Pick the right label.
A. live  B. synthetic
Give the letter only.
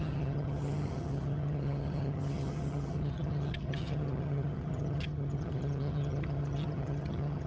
B